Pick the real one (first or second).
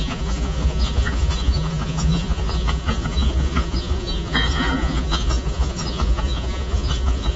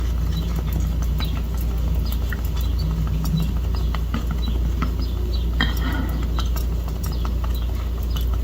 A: second